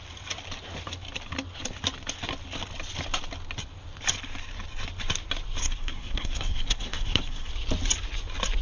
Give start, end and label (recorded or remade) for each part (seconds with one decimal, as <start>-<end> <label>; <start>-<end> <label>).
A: 0.0-5.6 recorded; 5.6-7.5 remade; 7.5-8.6 recorded